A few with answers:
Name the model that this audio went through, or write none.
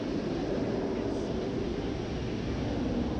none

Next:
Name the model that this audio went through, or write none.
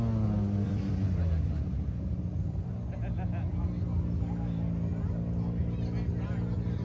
none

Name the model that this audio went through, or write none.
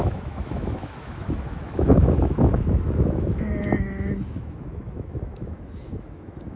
autoencoder, DAC-VAE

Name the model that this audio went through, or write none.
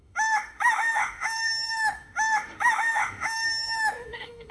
autoencoder, DAC-VAE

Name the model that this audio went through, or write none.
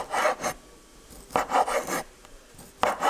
none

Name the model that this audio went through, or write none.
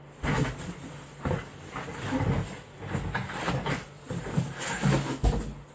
none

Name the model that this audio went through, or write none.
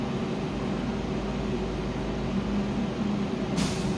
none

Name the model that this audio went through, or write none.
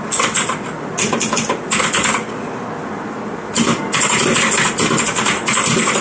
none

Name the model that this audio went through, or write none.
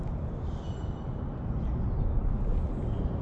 none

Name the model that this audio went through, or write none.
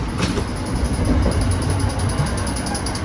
none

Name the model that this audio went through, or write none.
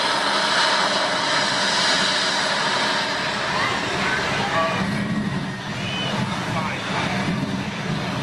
none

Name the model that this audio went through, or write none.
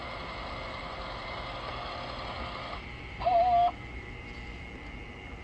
none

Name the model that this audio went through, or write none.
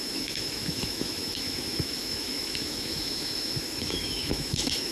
autoencoder, DAC-VAE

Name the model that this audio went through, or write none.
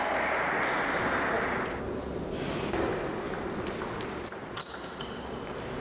none